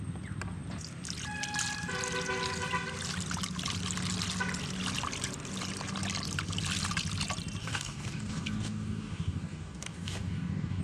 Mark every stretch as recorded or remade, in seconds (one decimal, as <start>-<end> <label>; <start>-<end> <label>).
0.0-7.6 recorded; 7.6-10.8 remade